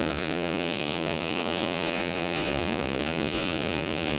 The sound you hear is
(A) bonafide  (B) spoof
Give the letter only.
B